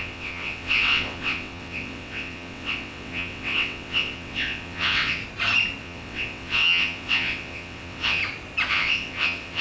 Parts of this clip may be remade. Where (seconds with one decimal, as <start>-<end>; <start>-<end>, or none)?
0.0-5.2; 5.8-8.2; 8.7-9.6